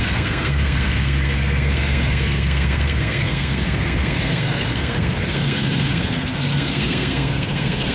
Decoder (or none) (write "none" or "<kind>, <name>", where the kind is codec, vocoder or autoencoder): codec, SNAC